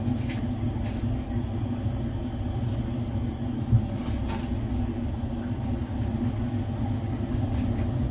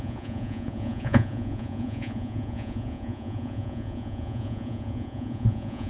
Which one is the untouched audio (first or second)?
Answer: first